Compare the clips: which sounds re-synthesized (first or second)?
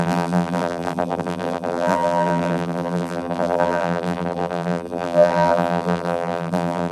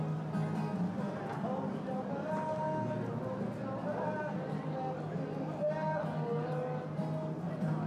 first